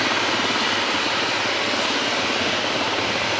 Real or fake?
real